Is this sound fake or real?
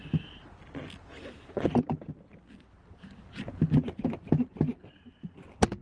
real